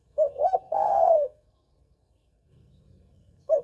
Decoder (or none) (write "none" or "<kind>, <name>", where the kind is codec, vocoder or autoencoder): codec, SNAC